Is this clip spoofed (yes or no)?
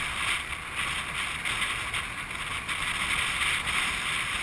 no